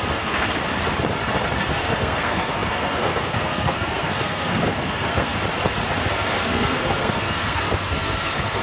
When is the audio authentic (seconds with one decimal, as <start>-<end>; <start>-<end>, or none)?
0.6-1.7; 5.3-6.1